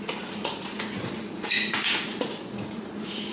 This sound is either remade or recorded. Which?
remade